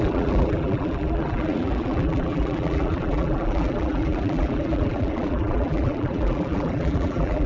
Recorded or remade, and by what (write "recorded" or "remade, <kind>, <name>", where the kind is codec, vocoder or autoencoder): remade, vocoder, BigVGAN v2